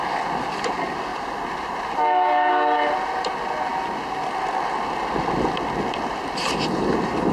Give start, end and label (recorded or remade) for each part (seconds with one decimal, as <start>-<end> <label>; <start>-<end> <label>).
0.0-7.3 recorded